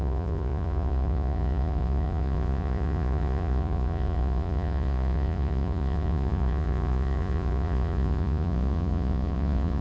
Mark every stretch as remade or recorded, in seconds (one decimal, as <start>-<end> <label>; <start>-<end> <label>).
0.0-9.8 remade